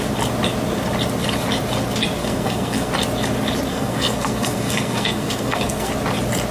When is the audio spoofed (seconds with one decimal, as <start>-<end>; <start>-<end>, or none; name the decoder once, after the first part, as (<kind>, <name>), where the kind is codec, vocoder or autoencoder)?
2.2-2.9 (codec, SNAC); 3.7-5.9